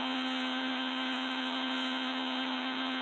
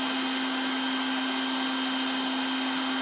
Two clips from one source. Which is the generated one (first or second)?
first